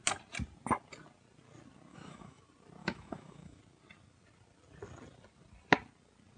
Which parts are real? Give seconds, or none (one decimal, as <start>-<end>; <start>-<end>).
0.0-1.9; 2.4-2.8; 3.6-6.4